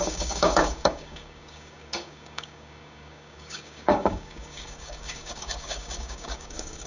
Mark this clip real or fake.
fake